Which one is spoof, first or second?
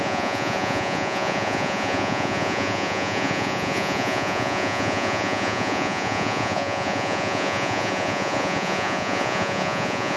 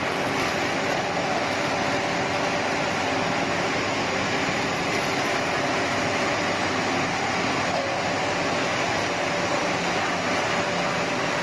first